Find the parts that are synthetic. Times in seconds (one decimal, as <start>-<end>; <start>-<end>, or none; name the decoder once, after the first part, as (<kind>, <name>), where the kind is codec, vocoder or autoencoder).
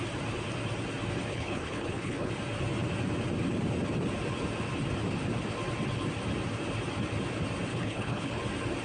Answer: 1.3-2.3 (codec, HILCodec); 7.7-8.4